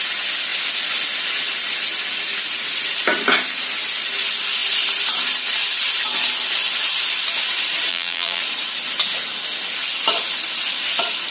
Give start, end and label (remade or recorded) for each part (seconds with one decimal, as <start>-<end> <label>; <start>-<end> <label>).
0.0-7.9 recorded; 7.9-8.4 remade; 8.4-11.3 recorded